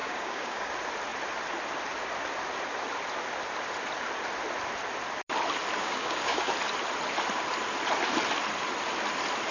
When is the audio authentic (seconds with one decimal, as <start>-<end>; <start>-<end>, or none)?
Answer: 0.7-5.8; 6.5-9.5